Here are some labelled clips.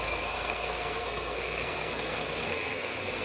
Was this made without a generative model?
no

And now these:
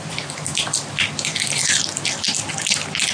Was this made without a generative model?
yes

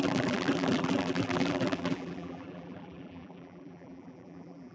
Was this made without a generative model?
no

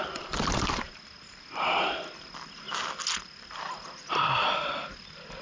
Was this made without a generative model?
yes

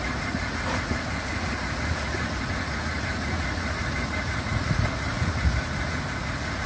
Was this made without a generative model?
no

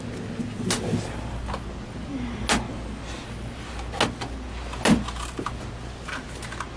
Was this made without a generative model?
yes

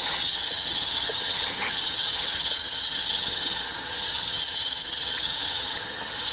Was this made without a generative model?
no